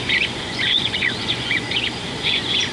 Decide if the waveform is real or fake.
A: fake